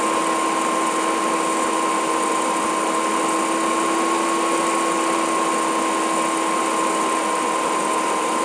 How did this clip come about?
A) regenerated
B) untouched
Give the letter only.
B